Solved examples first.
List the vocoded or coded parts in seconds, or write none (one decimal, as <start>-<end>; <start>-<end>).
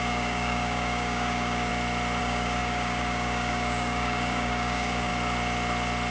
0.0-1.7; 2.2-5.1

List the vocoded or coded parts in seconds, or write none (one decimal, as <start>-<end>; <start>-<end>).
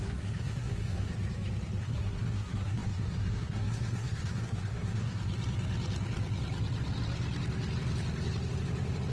0.0-1.1; 1.8-5.2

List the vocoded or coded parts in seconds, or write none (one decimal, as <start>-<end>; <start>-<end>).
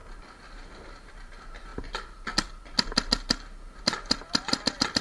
1.1-1.7; 3.8-5.0